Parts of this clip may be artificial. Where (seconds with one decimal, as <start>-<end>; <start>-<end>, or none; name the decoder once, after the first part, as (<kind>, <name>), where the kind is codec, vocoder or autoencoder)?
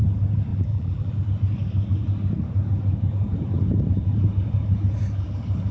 0.5-1.1 (vocoder, BigVGAN v2)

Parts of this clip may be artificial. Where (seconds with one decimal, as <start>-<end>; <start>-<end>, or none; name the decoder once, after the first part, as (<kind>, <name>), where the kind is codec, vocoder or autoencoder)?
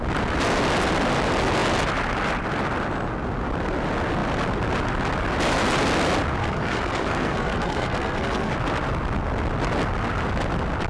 6.4-8.5 (codec, SNAC)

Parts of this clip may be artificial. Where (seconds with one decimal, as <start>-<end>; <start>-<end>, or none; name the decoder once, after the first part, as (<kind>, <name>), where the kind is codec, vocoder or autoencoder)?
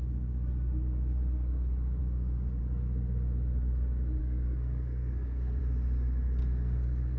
4.2-5.6 (codec, SNAC); 6.4-7.2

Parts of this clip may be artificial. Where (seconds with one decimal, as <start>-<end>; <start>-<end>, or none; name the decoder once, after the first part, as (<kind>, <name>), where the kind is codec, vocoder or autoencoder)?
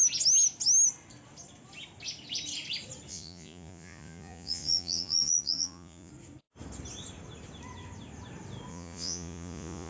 3.1-6.1 (vocoder, Vocos); 8.7-9.9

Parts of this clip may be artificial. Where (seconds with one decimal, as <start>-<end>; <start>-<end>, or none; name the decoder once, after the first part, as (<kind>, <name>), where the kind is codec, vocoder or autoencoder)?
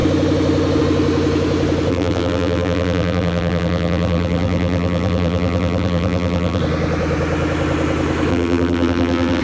1.9-6.6 (vocoder, BigVGAN v2); 8.3-9.4